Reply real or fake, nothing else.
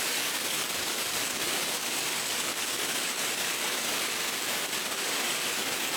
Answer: fake